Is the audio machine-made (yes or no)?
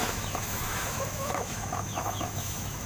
yes